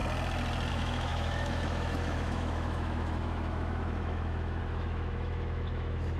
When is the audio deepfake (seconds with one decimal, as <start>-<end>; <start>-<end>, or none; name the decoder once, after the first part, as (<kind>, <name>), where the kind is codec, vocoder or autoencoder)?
0.7-6.2 (autoencoder, DAC-VAE)